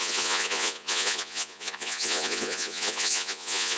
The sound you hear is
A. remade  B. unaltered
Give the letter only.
A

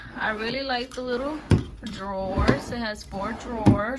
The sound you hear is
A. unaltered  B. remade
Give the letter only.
B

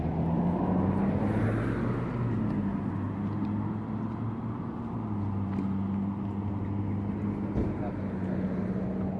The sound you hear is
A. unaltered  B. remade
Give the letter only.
A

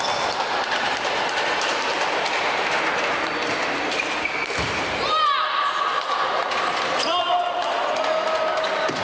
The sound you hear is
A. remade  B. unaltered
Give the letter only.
B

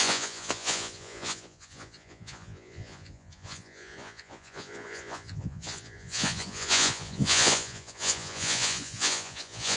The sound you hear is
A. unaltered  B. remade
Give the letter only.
B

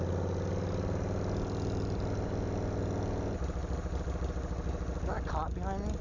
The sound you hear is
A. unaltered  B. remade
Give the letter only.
A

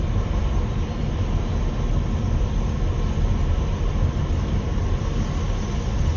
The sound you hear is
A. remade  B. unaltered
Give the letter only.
B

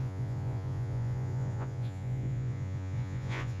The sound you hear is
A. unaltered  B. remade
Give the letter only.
B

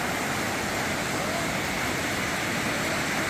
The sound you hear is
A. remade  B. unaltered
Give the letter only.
B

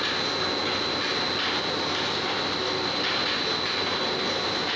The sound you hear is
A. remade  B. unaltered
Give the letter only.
B